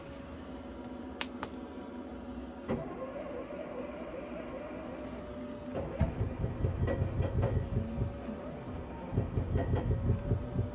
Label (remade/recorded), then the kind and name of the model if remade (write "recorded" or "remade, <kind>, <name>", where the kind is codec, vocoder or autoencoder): recorded